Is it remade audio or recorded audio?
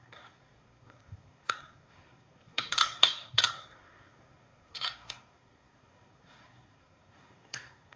remade